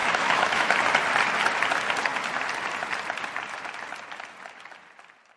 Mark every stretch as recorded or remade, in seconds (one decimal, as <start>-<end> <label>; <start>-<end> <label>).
0.0-0.8 remade; 0.8-5.4 recorded

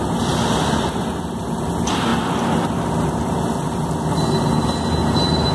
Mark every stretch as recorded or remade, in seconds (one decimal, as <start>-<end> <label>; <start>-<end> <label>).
0.0-5.5 recorded

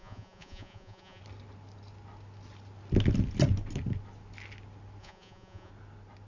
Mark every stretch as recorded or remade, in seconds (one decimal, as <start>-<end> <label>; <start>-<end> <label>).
0.0-1.2 remade; 1.2-5.0 recorded; 5.0-5.7 remade; 5.7-6.3 recorded

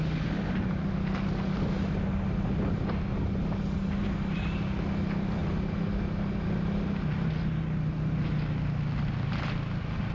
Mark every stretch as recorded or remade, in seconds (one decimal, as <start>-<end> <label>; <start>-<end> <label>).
0.0-10.1 recorded

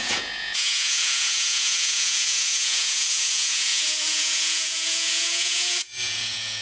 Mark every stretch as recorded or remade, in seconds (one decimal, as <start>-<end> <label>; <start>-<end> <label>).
0.0-6.6 remade